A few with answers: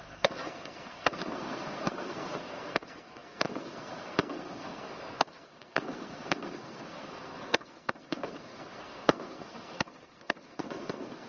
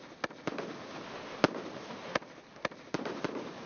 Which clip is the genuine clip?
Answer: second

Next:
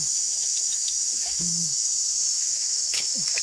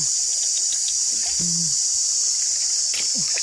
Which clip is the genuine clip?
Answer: second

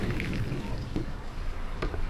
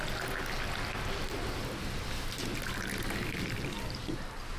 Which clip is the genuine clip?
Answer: second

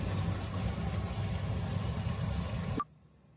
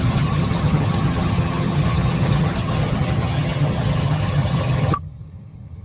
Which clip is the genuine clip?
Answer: first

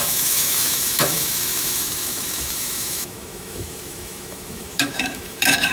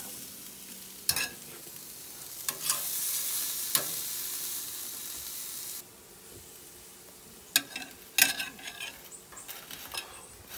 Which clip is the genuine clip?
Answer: second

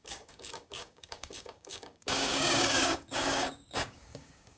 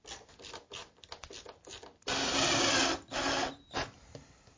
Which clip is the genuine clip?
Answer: second